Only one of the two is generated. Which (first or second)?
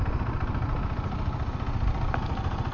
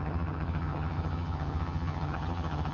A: second